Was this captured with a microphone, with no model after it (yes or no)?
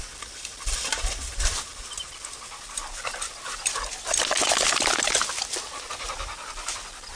yes